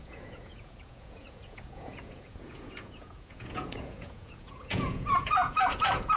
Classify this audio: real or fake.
fake